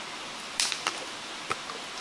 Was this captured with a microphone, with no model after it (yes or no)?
yes